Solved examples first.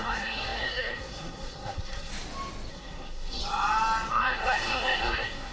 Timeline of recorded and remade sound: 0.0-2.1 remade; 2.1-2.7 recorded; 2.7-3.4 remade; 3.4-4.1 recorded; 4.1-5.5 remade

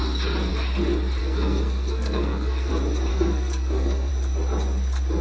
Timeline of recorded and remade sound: 0.0-1.2 recorded; 1.2-2.7 remade; 2.7-3.1 recorded; 3.1-4.1 remade; 4.1-5.2 recorded

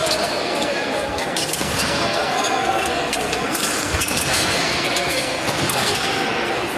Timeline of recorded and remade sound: 0.0-6.8 remade

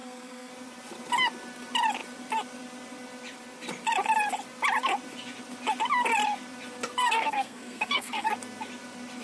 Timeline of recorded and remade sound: 0.0-0.5 remade; 0.5-7.0 recorded; 7.0-8.3 remade; 8.3-9.2 recorded

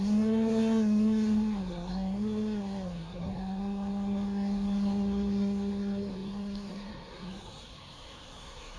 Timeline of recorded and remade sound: 0.0-8.8 remade